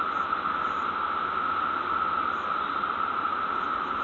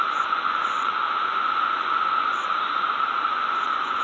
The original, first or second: first